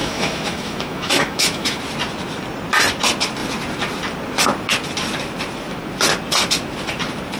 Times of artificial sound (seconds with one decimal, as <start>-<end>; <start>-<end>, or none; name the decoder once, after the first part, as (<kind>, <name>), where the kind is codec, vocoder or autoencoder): 0.0-1.8 (autoencoder, DAC-VAE)